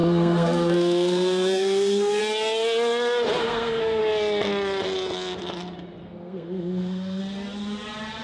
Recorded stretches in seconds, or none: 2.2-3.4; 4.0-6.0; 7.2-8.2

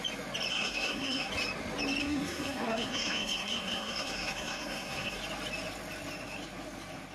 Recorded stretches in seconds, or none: 0.0-0.5; 1.3-2.0; 5.2-7.1

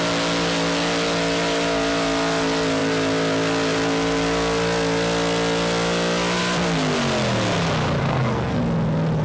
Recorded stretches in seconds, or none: 0.0-8.0; 8.6-9.2

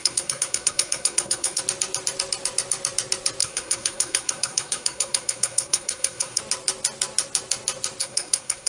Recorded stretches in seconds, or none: 1.6-3.4; 6.4-8.0

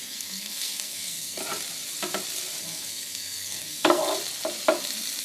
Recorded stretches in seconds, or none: 1.4-2.6; 4.1-5.2